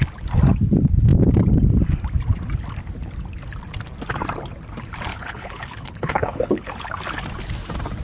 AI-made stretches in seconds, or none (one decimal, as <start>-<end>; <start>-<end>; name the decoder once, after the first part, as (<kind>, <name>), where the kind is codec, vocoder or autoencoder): 5.1-7.0 (codec, HILCodec)